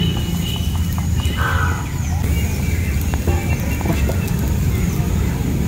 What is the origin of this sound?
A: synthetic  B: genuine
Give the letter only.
B